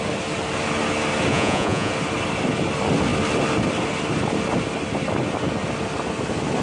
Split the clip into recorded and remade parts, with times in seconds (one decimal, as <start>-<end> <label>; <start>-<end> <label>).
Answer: 0.0-1.3 recorded; 1.3-1.9 remade; 1.9-6.6 recorded